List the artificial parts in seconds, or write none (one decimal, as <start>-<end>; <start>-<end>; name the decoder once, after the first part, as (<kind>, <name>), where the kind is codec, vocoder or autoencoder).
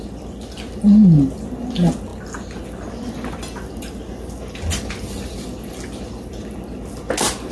none